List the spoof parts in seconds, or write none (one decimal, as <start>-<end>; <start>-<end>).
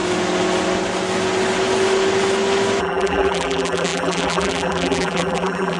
2.8-5.8